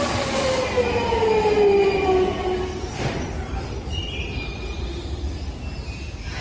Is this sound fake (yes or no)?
no